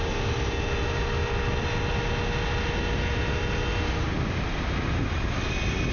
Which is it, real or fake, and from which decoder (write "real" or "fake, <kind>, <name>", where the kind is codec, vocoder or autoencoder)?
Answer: real